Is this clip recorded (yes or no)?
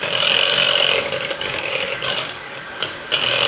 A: no